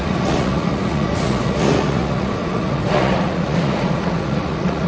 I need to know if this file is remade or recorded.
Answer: remade